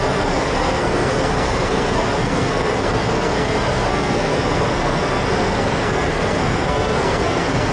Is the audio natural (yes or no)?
no